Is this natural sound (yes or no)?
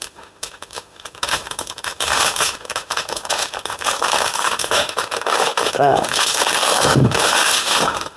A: no